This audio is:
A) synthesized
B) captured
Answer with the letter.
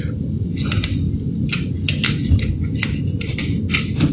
B